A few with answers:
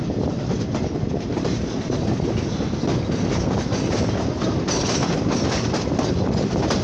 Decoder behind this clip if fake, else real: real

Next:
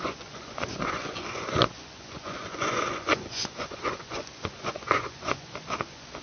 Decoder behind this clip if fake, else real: fake, vocoder, Vocos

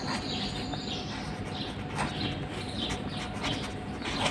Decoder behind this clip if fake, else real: real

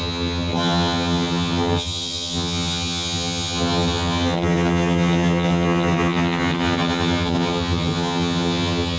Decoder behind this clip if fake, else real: fake, vocoder, HiFi-GAN